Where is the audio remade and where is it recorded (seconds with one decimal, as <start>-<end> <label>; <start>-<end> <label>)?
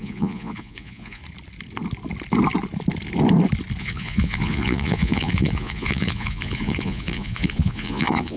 0.0-1.2 remade; 1.2-3.8 recorded; 3.8-8.4 remade